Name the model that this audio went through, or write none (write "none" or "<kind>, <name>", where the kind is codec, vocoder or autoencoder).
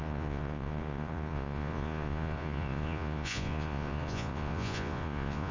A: vocoder, Vocos